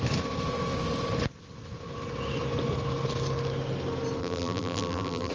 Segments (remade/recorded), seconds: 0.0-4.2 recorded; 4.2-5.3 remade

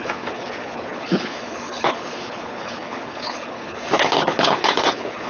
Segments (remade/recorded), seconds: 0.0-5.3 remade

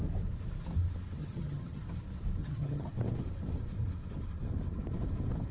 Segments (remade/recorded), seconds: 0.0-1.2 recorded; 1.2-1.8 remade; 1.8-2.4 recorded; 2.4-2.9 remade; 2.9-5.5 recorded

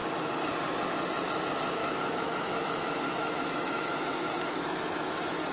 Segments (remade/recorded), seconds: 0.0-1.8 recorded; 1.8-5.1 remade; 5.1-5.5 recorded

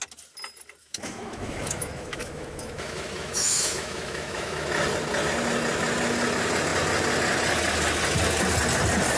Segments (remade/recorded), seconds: 0.0-0.8 recorded; 0.8-4.7 remade; 4.7-9.2 recorded

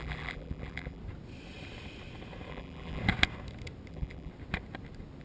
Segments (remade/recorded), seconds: 0.0-1.0 remade; 1.0-2.5 recorded; 2.5-3.0 remade; 3.0-3.9 recorded; 3.9-4.3 remade; 4.3-5.2 recorded

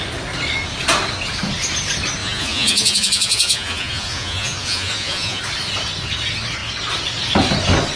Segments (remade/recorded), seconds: 0.0-2.2 recorded; 2.2-5.4 remade; 5.4-8.0 recorded